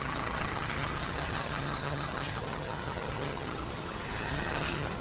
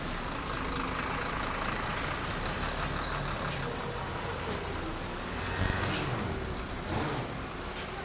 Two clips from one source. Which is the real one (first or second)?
second